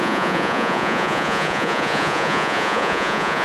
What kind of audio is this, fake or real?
fake